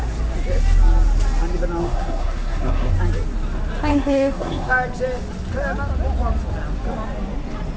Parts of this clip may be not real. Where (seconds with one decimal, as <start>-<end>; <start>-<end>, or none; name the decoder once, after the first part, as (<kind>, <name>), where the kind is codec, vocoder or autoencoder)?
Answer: 1.8-2.9 (codec, SNAC); 3.9-4.7